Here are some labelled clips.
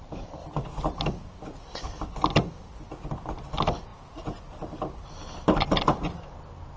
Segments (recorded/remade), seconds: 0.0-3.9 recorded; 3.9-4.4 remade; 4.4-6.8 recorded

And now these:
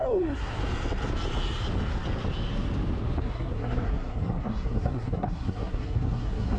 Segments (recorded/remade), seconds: 0.0-0.6 remade; 0.6-3.2 recorded; 3.2-6.6 remade

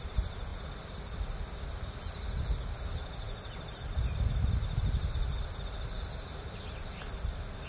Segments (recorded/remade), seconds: 0.0-7.7 recorded

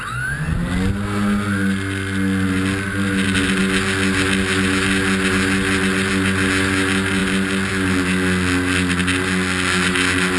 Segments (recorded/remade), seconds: 0.0-10.4 recorded

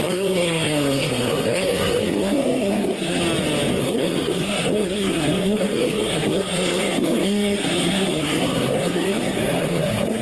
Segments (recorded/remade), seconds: 0.0-3.2 remade; 3.2-3.8 recorded; 3.8-10.2 remade

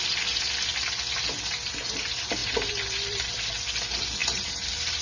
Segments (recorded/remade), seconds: 0.0-2.4 recorded; 2.4-3.5 remade; 3.5-5.0 recorded